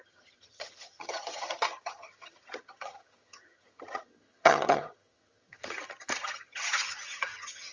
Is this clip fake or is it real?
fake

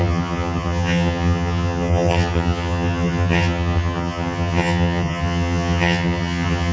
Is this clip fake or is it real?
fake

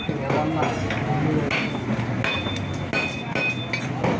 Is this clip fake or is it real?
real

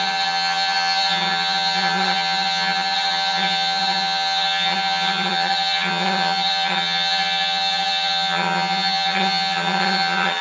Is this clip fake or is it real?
fake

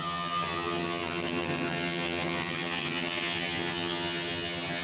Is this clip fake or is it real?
fake